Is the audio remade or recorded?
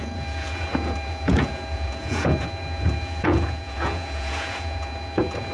remade